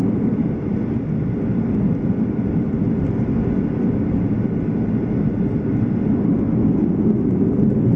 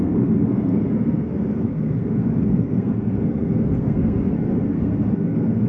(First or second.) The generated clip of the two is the second